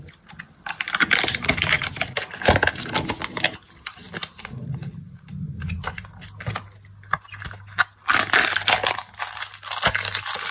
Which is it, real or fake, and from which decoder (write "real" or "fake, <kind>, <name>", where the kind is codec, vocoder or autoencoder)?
real